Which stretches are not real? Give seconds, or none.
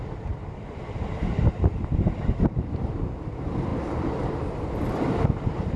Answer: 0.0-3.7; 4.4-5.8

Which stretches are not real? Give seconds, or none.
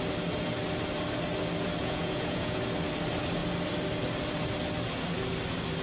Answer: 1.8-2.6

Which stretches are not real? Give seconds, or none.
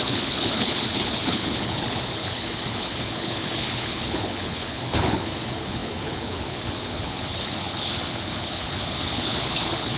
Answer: 0.0-10.0